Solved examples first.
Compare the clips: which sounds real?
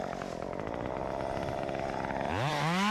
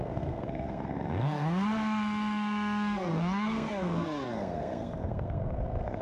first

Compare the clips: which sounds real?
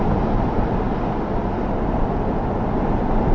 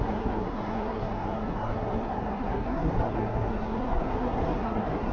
first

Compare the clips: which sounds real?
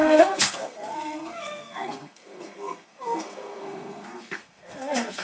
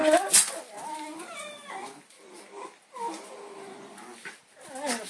second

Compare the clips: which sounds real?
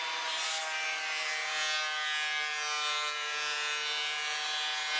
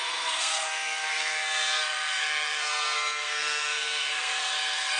first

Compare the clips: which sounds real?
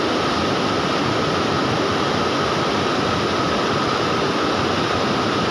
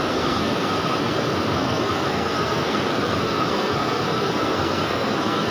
first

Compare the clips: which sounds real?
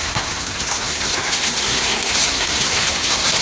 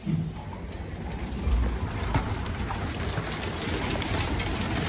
second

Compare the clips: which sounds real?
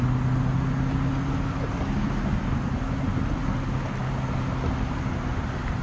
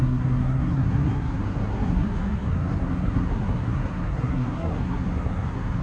first